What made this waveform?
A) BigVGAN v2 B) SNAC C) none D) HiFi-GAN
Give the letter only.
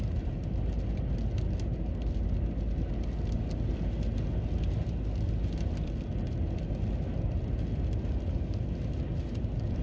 C